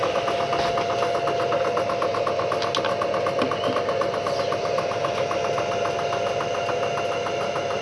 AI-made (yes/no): no